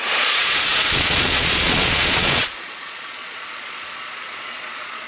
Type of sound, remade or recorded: remade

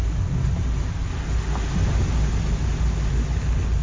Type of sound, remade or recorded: recorded